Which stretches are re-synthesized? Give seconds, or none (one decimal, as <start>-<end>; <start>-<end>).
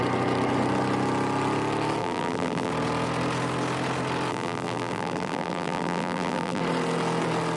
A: 2.0-2.7; 4.3-6.6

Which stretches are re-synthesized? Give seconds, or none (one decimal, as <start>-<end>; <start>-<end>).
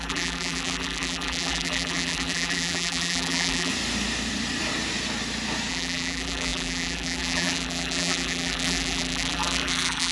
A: 0.0-3.7; 5.7-10.1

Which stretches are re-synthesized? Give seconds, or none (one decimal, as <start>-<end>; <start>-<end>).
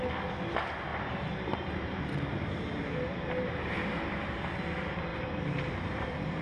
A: 0.9-4.5; 5.1-6.4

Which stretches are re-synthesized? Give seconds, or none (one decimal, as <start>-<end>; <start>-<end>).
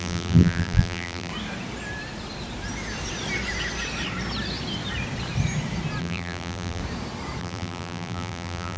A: 0.0-1.3; 6.0-6.8; 7.4-8.8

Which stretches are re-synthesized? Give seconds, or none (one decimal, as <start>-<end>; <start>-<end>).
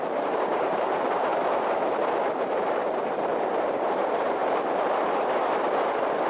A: 0.0-1.3; 2.6-4.4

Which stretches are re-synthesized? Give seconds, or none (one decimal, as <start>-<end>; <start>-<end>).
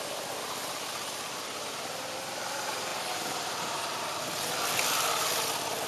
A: 0.0-5.9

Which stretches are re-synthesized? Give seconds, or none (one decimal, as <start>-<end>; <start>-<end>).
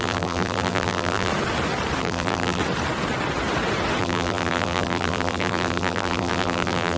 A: 0.0-1.3; 2.0-2.6; 4.0-7.0